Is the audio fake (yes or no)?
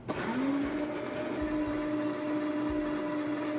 no